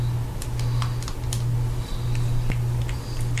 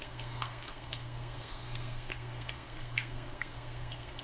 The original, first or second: first